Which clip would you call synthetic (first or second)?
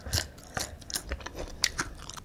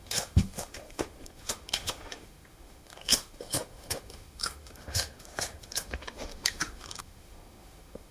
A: second